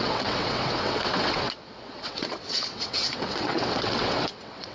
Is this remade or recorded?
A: remade